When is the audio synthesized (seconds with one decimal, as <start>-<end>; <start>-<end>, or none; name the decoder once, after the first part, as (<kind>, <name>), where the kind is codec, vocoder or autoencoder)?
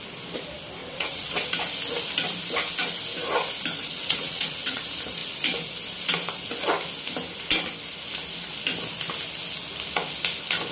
0.8-1.5 (vocoder, WaveNeXt); 3.8-4.8